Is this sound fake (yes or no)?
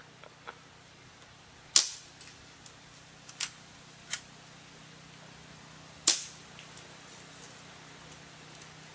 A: no